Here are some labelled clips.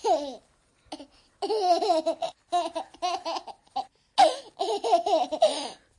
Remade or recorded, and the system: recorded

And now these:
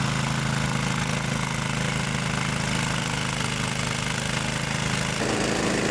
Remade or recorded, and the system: recorded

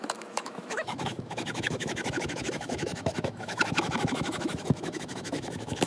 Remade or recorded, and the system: remade, autoencoder, DAC-VAE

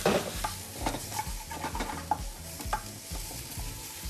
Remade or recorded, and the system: recorded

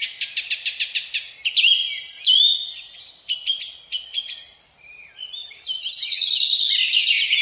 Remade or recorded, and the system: recorded